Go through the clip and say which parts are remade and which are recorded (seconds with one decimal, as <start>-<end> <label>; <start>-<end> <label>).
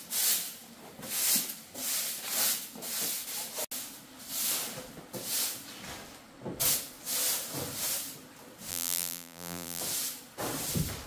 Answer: 0.0-8.7 recorded; 8.7-9.8 remade; 9.8-11.1 recorded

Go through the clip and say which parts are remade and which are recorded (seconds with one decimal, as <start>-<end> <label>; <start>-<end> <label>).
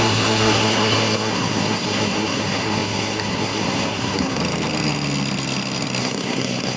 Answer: 0.0-4.4 remade; 4.4-6.0 recorded; 6.0-6.8 remade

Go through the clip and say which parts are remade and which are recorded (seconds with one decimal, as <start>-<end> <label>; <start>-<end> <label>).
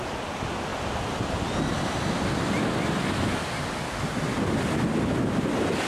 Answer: 0.0-5.9 recorded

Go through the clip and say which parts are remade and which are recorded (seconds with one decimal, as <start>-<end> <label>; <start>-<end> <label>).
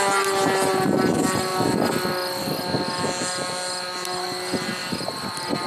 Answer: 0.0-5.7 recorded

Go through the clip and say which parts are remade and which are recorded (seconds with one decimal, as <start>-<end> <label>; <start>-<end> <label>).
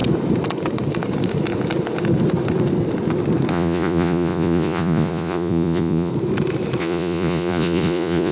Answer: 0.0-3.5 recorded; 3.5-6.1 remade; 6.1-6.8 recorded; 6.8-8.3 remade